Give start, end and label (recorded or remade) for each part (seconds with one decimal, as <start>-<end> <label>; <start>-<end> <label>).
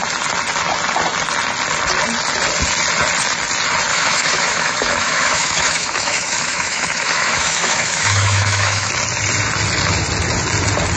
0.0-3.9 recorded; 3.9-8.9 remade; 8.9-11.0 recorded